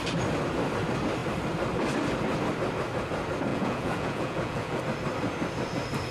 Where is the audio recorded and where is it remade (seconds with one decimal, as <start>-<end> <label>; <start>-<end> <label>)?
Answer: 0.0-3.5 recorded; 3.5-4.8 remade; 4.8-6.1 recorded